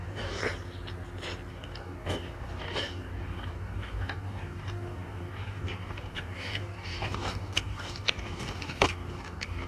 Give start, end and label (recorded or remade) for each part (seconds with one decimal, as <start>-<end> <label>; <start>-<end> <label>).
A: 0.0-0.4 remade; 0.4-1.5 recorded; 1.5-9.7 remade